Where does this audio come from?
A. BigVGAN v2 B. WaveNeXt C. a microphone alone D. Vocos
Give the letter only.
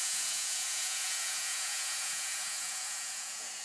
D